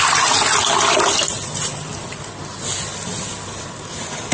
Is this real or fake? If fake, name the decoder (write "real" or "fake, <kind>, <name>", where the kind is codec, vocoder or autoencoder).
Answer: real